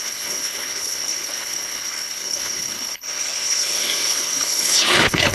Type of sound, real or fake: fake